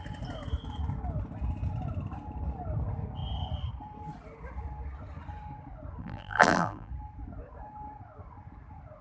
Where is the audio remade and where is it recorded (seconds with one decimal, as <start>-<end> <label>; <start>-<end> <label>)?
0.0-6.0 recorded; 6.0-6.9 remade; 6.9-9.0 recorded